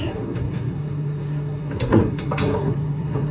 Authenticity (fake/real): fake